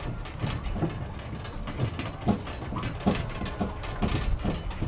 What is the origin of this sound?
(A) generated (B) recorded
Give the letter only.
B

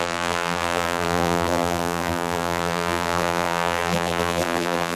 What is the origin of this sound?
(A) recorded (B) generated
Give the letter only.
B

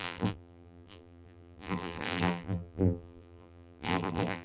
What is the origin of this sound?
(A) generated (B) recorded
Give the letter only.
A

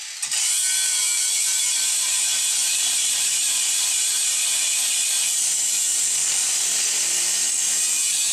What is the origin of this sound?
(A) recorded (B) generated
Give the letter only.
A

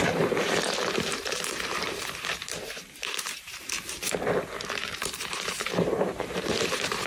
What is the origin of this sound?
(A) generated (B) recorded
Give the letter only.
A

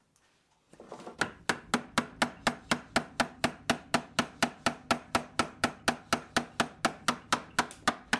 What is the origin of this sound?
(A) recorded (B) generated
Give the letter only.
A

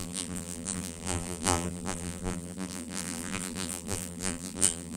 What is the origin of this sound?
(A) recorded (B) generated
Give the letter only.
B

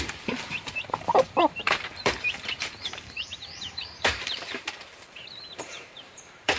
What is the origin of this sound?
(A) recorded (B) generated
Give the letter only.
B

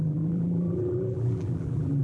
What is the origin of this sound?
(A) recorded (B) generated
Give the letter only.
B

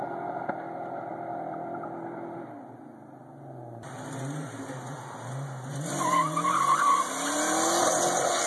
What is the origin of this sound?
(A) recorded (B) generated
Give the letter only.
A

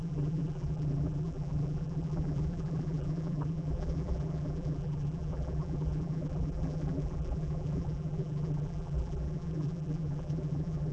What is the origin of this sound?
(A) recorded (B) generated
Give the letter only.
B